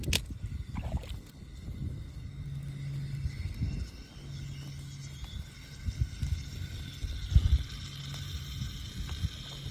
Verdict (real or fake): real